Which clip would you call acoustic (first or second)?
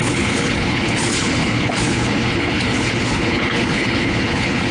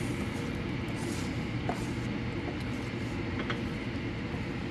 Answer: second